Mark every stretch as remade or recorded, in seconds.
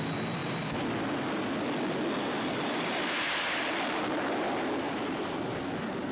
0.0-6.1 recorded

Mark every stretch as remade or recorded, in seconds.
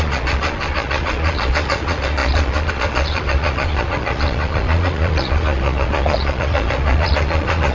0.0-7.7 remade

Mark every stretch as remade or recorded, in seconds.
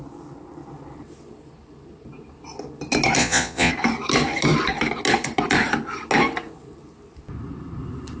0.0-3.2 recorded; 3.2-3.7 remade; 3.7-8.2 recorded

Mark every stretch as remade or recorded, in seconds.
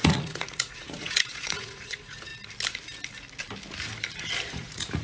0.0-2.3 remade; 2.3-4.5 recorded; 4.5-5.0 remade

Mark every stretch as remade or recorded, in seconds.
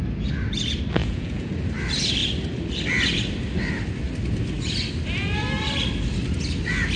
0.0-1.0 recorded; 1.0-1.5 remade; 1.5-7.0 recorded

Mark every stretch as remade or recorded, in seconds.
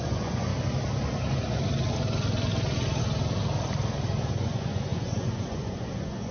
0.0-0.5 remade; 0.5-4.3 recorded; 4.3-6.3 remade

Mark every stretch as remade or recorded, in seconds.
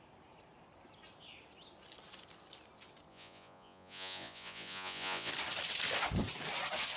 0.0-3.1 recorded; 3.1-5.3 remade; 5.3-7.0 recorded